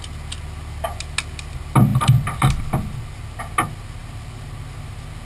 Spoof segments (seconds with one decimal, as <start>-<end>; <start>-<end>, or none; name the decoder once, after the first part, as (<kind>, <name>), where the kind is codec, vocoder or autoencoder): none